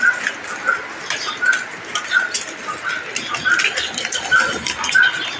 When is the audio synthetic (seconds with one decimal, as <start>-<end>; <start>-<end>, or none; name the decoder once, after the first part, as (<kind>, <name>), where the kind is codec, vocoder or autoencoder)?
none